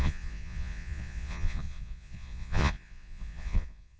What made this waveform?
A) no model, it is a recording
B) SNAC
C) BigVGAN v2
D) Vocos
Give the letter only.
D